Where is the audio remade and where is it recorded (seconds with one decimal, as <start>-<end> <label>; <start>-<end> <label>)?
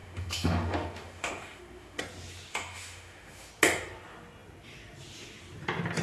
0.0-2.0 remade; 2.0-2.5 recorded; 2.5-3.5 remade; 3.5-6.0 recorded